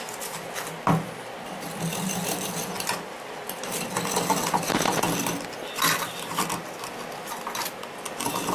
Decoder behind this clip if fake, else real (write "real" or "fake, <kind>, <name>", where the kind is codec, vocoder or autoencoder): real